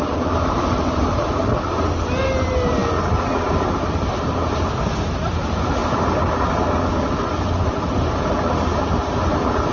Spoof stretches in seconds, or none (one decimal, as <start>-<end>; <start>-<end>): 0.0-1.4; 2.2-2.8; 3.3-9.7